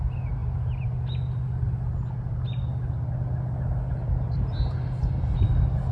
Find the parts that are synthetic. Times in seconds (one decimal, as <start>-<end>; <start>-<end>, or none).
none